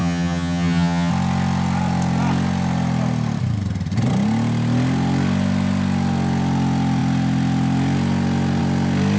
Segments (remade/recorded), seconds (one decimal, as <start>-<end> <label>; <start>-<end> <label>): 0.0-1.1 remade; 1.1-9.2 recorded